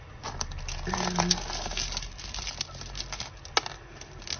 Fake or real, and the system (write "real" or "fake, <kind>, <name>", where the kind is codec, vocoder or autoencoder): real